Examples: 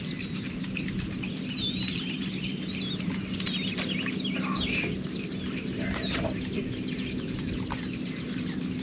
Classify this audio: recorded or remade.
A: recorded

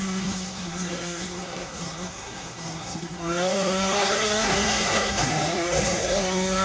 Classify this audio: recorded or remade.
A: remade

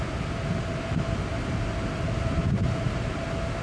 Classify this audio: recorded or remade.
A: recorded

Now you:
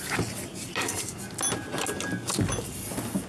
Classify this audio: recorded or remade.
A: recorded